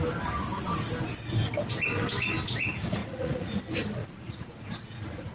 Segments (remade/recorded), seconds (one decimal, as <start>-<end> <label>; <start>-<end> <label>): 0.0-3.0 recorded; 3.0-3.6 remade; 3.6-4.0 recorded; 4.0-5.3 remade